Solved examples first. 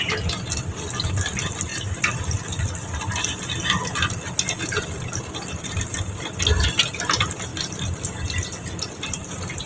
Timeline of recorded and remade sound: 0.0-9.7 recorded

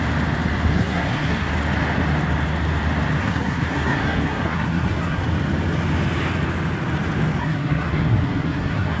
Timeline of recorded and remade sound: 0.0-0.7 recorded; 0.7-1.5 remade; 1.5-3.2 recorded; 3.2-5.2 remade; 5.2-7.4 recorded; 7.4-9.0 remade